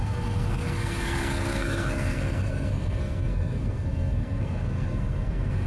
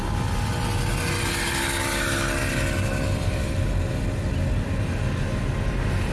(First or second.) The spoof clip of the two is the first